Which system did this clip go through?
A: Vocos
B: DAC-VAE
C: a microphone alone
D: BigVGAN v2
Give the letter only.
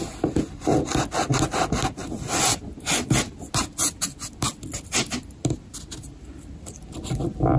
C